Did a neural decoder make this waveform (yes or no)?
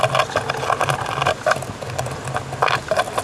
no